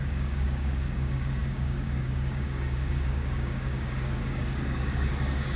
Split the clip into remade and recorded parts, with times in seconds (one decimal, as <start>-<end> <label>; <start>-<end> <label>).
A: 0.0-5.6 remade

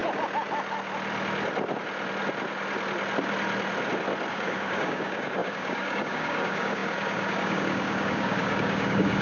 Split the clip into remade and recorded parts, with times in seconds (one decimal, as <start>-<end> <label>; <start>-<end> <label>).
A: 0.0-4.3 recorded; 4.3-9.2 remade

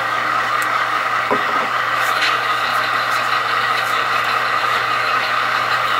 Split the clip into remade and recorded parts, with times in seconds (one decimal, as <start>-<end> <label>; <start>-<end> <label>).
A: 0.0-2.7 remade; 2.7-3.6 recorded; 3.6-4.0 remade; 4.0-4.6 recorded; 4.6-6.0 remade